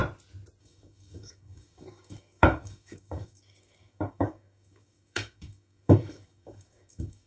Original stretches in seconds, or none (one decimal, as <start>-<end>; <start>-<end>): 0.0-0.6